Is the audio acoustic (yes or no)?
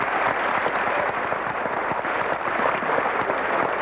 yes